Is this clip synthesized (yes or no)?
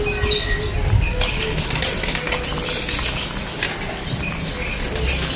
no